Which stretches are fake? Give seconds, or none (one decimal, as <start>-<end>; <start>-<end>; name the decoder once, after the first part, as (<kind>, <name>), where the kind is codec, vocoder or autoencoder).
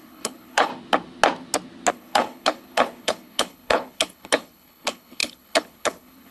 0.0-0.7 (codec, HILCodec); 1.9-6.3